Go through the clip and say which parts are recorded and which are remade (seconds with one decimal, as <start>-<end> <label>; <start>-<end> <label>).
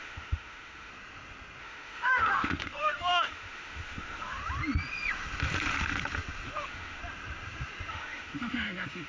0.0-0.9 remade; 0.9-1.6 recorded; 1.6-4.4 remade; 4.4-6.6 recorded; 6.6-7.0 remade; 7.0-7.9 recorded; 7.9-9.1 remade